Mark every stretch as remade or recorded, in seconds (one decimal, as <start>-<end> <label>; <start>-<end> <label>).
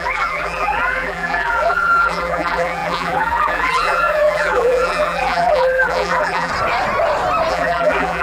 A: 0.0-6.5 remade; 6.5-7.5 recorded; 7.5-8.2 remade